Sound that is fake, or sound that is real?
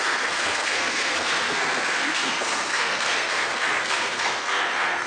fake